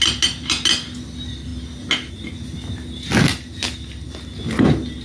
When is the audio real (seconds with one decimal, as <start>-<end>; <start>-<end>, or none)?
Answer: 0.0-5.0